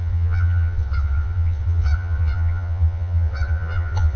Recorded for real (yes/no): no